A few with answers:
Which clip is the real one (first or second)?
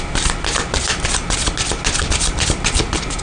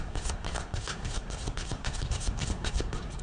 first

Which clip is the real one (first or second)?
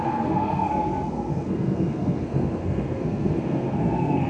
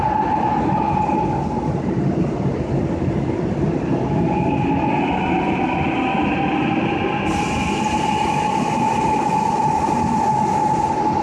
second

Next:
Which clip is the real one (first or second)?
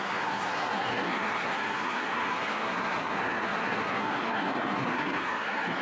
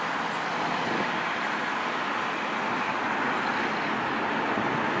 second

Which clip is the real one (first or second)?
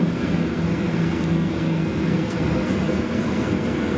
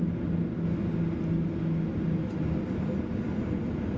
second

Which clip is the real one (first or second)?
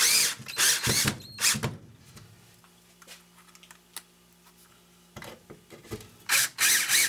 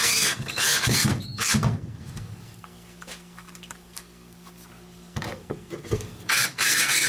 first